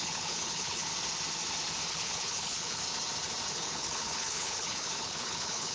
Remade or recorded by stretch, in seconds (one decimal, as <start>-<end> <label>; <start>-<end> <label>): 0.0-0.9 remade; 0.9-1.9 recorded; 1.9-2.8 remade; 2.8-3.5 recorded; 3.5-5.7 remade